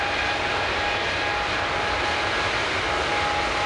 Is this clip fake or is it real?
real